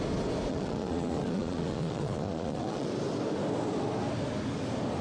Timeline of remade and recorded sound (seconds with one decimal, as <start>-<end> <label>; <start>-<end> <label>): 0.0-0.5 recorded; 0.5-2.9 remade; 2.9-5.0 recorded